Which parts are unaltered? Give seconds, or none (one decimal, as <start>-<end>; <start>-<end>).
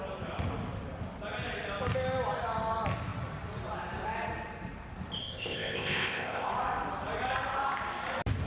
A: 0.0-5.2; 6.5-8.5